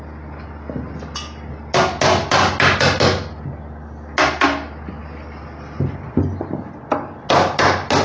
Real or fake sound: real